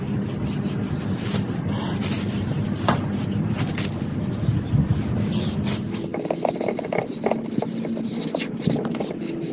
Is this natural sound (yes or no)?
yes